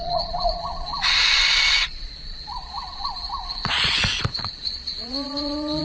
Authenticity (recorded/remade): remade